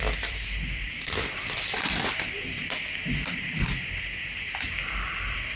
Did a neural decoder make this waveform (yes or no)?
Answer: yes